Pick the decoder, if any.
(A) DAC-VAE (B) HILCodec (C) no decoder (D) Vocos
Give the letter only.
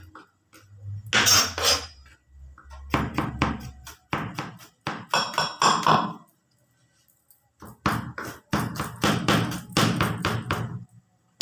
C